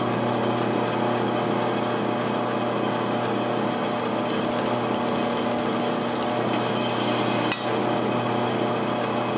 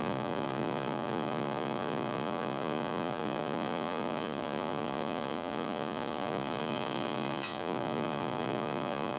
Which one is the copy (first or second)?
second